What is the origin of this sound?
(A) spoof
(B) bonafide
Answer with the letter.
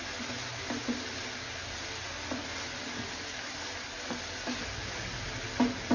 B